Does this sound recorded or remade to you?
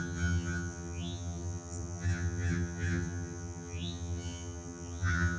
remade